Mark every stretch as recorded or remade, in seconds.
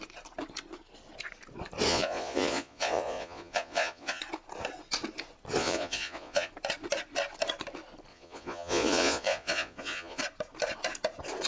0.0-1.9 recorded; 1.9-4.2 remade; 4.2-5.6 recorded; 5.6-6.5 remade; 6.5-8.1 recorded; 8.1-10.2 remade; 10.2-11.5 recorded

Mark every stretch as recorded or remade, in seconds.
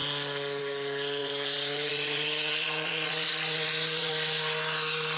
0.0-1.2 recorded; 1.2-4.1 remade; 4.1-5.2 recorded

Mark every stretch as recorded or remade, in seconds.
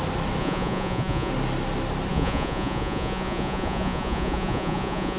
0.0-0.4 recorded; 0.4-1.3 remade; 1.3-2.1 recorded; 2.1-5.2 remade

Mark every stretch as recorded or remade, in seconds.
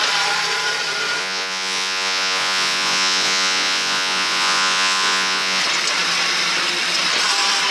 0.0-1.2 recorded; 1.2-5.6 remade; 5.6-7.7 recorded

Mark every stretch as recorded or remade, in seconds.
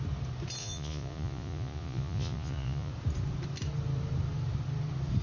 0.0-0.6 recorded; 0.6-2.9 remade; 2.9-5.2 recorded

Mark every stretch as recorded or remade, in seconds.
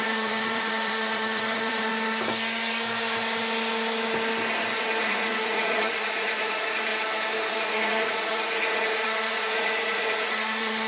0.0-1.9 remade; 1.9-5.0 recorded; 5.0-6.9 remade; 6.9-7.5 recorded; 7.5-10.9 remade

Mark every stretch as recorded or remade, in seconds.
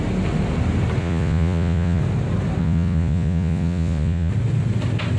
0.0-1.0 recorded; 1.0-2.0 remade; 2.0-2.6 recorded; 2.6-4.3 remade; 4.3-5.2 recorded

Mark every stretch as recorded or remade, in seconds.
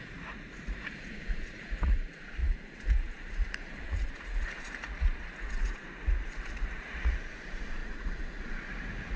0.0-9.2 remade